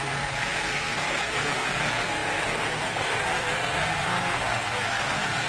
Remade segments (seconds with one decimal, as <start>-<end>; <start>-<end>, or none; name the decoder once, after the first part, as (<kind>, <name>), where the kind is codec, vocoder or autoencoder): 0.0-5.5 (codec, SNAC)